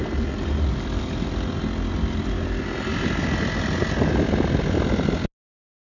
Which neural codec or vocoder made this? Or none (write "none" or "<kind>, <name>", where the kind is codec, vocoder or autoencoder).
none